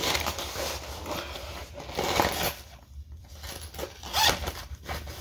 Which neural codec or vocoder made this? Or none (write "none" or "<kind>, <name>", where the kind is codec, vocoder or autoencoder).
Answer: none